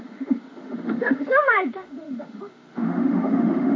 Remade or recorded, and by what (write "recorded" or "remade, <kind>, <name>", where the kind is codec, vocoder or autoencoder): remade, autoencoder, DAC-VAE